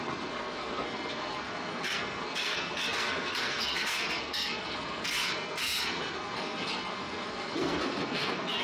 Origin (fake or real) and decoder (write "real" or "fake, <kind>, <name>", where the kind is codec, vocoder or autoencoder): fake, codec, SNAC